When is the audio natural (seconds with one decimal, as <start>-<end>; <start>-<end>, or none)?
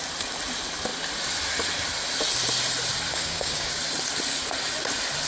0.0-3.1; 3.8-5.3